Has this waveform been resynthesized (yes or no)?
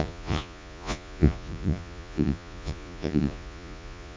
yes